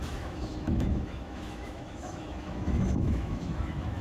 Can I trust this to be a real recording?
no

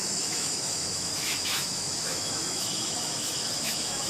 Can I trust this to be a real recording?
no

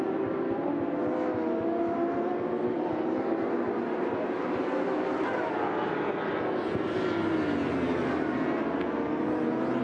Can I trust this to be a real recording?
yes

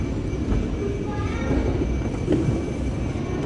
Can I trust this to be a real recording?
yes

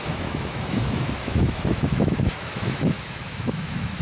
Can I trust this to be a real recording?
no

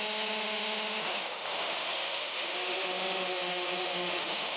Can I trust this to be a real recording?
no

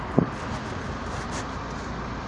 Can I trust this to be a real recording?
yes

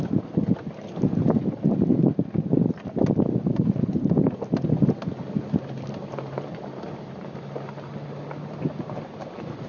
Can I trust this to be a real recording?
yes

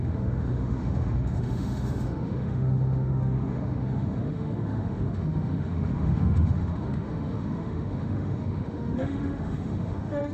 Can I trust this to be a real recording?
no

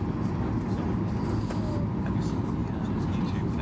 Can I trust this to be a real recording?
yes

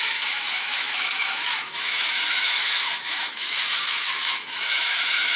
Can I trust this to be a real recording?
no